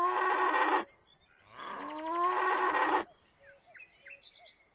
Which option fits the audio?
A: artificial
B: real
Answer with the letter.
B